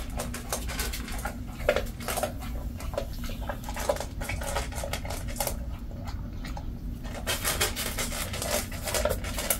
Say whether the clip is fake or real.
real